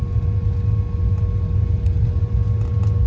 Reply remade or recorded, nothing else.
recorded